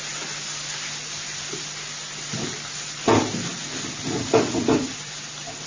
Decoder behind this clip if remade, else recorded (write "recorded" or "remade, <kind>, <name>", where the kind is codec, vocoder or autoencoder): recorded